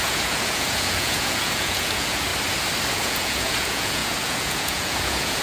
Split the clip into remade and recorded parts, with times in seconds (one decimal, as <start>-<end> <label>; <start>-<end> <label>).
0.0-2.3 remade; 2.3-2.9 recorded; 2.9-5.4 remade